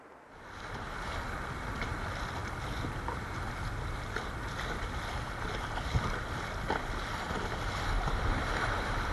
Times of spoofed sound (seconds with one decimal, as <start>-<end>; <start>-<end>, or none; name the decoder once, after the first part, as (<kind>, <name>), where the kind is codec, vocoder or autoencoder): none

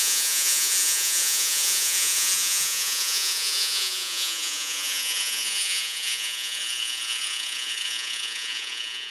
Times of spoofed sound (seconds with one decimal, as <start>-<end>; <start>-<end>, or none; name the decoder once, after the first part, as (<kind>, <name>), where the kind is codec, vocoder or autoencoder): 0.0-9.1 (vocoder, Vocos)

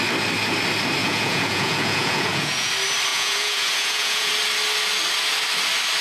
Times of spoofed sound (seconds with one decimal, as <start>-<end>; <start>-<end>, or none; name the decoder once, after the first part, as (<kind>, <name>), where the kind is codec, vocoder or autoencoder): 1.0-2.7 (vocoder, Vocos); 3.1-4.3

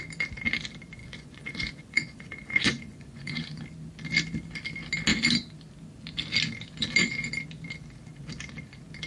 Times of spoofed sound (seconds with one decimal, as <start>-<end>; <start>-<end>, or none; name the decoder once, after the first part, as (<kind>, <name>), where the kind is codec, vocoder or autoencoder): 1.0-3.6 (vocoder, Vocos)

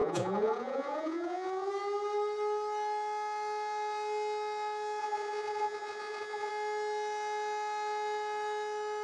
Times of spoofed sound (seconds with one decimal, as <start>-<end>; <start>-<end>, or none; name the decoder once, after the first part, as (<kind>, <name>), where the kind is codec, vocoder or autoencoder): 0.0-1.7 (vocoder, Vocos); 5.0-6.5

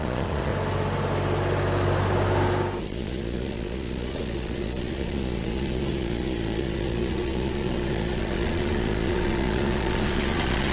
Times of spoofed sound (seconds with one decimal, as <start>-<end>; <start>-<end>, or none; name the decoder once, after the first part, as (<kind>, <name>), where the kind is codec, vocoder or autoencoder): 0.0-0.5 (vocoder, Vocos); 2.8-10.7